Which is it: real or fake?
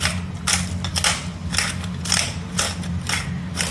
real